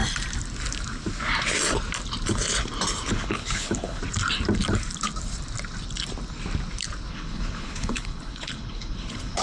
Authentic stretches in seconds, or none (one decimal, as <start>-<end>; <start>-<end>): 0.0-3.1; 4.0-7.1